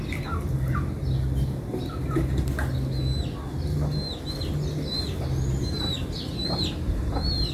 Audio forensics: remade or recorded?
recorded